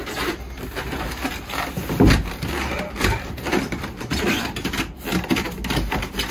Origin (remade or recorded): recorded